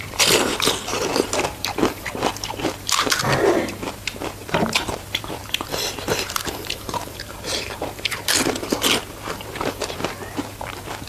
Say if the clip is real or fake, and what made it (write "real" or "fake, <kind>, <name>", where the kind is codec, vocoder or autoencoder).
fake, vocoder, BigVGAN v2